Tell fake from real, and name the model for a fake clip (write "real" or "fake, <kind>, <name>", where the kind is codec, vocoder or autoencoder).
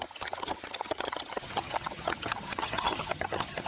fake, vocoder, HiFi-GAN